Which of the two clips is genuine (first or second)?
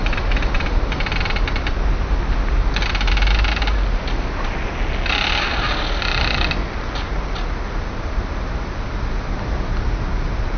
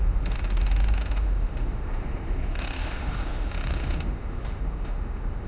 first